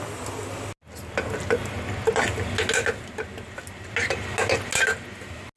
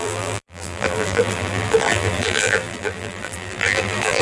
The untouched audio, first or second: first